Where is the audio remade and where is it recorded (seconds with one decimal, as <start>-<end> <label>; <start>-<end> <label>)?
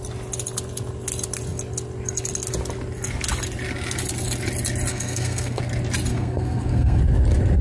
0.0-4.9 recorded; 4.9-5.6 remade; 5.6-6.1 recorded; 6.1-7.0 remade; 7.0-7.6 recorded